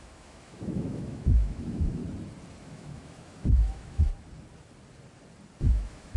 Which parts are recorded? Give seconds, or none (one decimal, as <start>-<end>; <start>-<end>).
2.0-2.6; 4.1-5.6